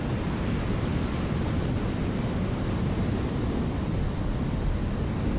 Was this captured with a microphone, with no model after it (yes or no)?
yes